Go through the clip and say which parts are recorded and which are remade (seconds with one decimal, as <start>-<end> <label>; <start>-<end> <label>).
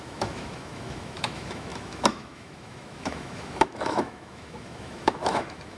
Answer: 0.0-5.8 remade